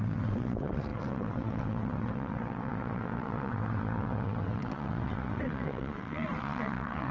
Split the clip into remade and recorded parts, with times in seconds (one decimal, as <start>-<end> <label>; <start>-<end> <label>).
0.0-7.1 remade